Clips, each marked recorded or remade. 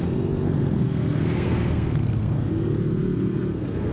remade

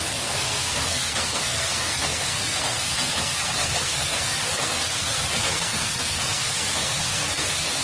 remade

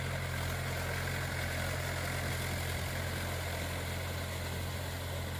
recorded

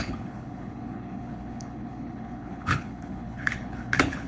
remade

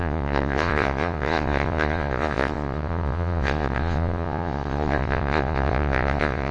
remade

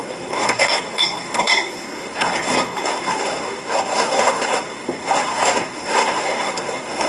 remade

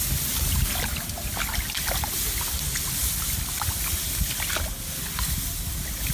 recorded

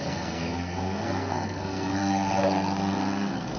remade